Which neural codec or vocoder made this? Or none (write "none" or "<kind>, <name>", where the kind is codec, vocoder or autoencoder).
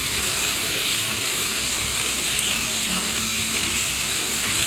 codec, DAC